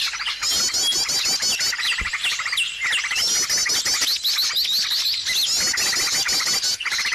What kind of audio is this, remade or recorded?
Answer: recorded